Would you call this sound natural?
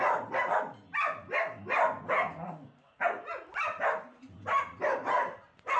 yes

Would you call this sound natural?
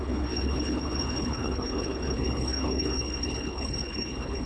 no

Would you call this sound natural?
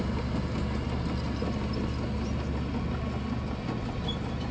yes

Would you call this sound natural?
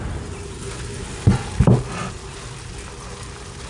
yes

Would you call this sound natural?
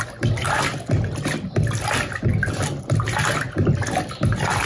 yes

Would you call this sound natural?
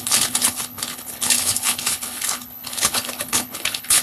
no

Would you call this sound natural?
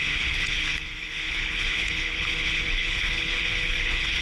no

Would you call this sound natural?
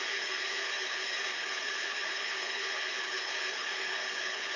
no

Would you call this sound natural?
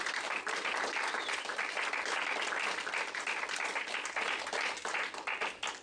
yes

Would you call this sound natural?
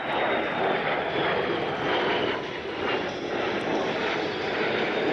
yes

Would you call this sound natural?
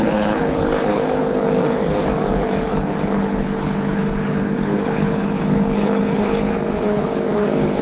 no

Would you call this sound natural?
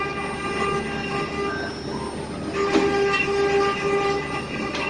yes